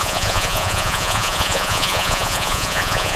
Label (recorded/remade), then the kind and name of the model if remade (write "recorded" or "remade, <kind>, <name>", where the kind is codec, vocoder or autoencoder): remade, vocoder, Vocos